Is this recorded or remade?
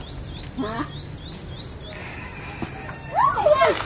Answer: recorded